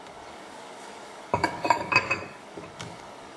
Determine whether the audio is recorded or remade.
remade